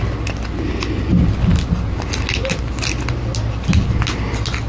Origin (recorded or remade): recorded